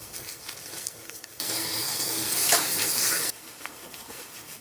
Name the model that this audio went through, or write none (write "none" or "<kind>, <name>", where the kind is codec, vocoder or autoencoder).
codec, SNAC